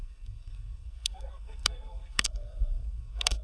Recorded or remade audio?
remade